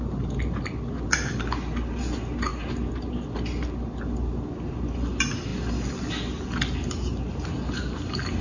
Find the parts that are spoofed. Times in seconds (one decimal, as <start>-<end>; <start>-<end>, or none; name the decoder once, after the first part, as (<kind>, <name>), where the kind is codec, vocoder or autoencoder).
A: none